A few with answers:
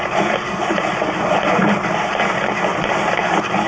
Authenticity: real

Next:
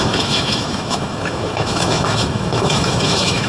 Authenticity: fake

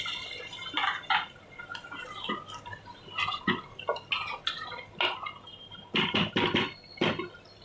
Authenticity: real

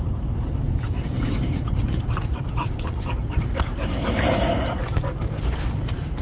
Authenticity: fake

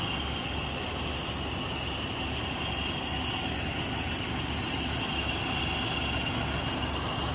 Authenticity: real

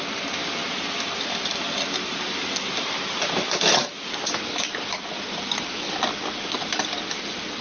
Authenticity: real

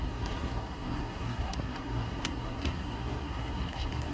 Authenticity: fake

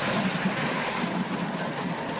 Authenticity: real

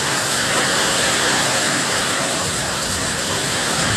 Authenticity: fake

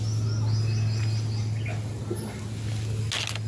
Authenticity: real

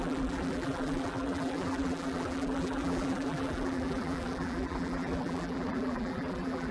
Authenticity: fake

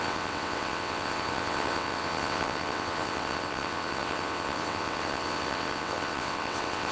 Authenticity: fake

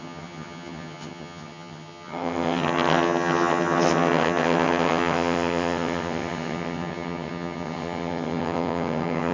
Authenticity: fake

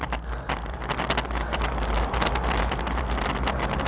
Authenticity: real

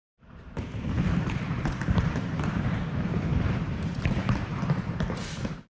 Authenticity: fake